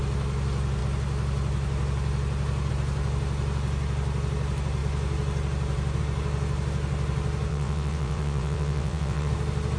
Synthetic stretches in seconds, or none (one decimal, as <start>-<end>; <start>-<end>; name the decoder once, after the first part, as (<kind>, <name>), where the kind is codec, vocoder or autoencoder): 7.5-9.3 (vocoder, WaveNeXt)